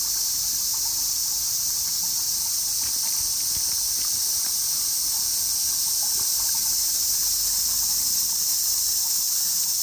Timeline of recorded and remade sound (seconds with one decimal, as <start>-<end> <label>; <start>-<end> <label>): 0.0-9.8 recorded